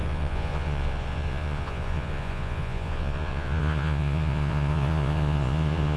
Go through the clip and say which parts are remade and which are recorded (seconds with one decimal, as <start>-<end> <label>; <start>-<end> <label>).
0.0-6.0 remade